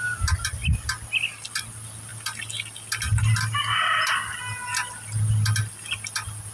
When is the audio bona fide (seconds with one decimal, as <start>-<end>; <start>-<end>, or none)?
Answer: 0.0-6.5